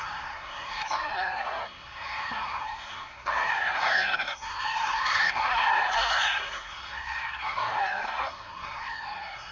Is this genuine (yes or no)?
no